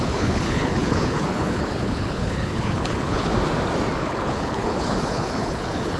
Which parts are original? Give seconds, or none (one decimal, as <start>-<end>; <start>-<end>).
3.3-4.0